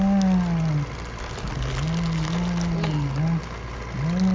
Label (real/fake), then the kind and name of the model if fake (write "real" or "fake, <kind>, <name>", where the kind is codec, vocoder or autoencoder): real